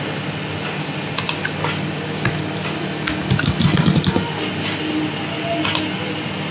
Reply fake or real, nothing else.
real